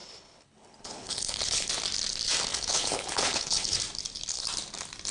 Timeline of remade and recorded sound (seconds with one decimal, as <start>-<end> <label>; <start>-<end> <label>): 0.0-1.7 remade; 1.7-2.5 recorded; 2.5-3.8 remade; 3.8-5.1 recorded